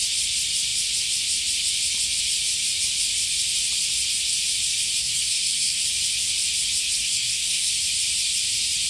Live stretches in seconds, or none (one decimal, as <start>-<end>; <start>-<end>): 0.0-5.0; 5.8-7.0; 7.7-8.9